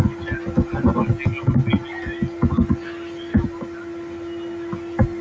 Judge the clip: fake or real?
real